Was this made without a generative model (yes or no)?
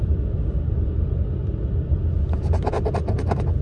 no